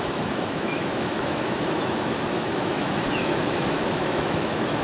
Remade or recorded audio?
remade